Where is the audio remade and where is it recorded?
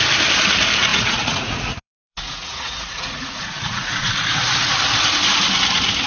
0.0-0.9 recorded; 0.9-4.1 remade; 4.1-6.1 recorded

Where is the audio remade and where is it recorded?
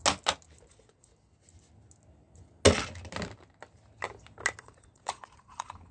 0.0-0.7 recorded; 0.7-1.1 remade; 1.1-4.6 recorded; 4.6-5.9 remade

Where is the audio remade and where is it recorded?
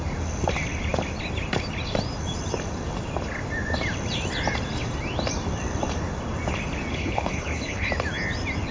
0.0-6.9 recorded; 6.9-7.9 remade; 7.9-8.7 recorded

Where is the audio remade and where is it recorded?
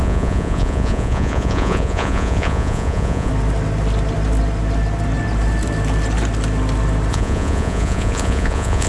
0.0-3.3 remade; 3.3-7.1 recorded; 7.1-8.9 remade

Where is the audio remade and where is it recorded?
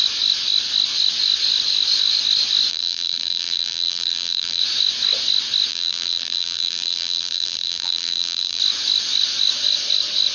0.0-2.7 recorded; 2.7-4.6 remade; 4.6-5.7 recorded; 5.7-8.6 remade; 8.6-10.3 recorded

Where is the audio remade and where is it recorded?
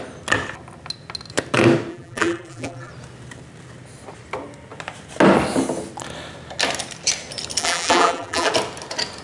0.0-1.9 recorded; 1.9-2.9 remade; 2.9-7.6 recorded; 7.6-8.5 remade; 8.5-9.2 recorded